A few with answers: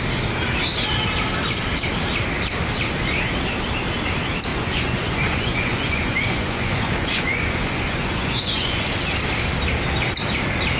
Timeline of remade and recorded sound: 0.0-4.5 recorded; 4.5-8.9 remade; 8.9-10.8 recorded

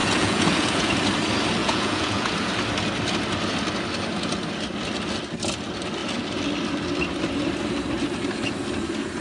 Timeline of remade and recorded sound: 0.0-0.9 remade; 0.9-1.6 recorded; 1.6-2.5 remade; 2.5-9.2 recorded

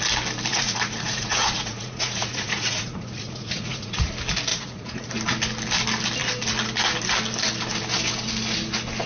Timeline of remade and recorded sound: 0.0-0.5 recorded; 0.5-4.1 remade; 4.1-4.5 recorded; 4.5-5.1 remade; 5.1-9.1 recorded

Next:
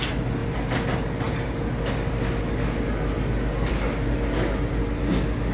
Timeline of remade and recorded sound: 0.0-5.5 recorded

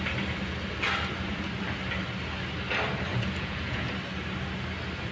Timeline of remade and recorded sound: 0.0-3.1 recorded; 3.1-3.9 remade; 3.9-5.1 recorded